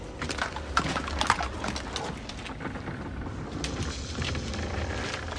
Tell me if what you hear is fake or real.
real